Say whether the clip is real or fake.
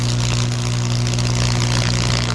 real